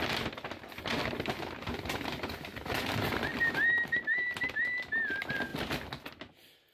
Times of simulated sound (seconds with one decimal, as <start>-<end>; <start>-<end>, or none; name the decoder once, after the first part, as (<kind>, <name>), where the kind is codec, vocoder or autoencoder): none